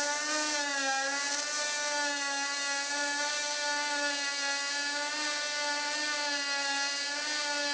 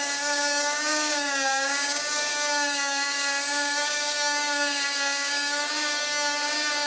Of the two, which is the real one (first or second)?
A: first